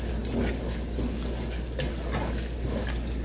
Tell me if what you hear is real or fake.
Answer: real